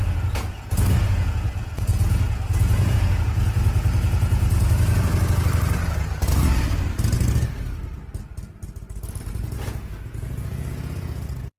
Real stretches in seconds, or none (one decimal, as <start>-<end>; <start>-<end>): 5.1-9.3